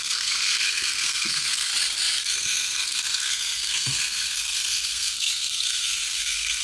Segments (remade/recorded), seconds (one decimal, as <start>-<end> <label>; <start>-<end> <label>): 0.0-1.7 remade; 1.7-2.2 recorded; 2.2-6.6 remade